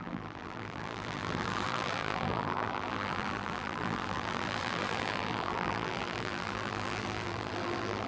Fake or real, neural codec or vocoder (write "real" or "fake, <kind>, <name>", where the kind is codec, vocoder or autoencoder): fake, vocoder, BigVGAN v2